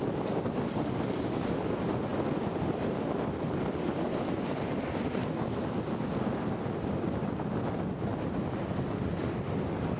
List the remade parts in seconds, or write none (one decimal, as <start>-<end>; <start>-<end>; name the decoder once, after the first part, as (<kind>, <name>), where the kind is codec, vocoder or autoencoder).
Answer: none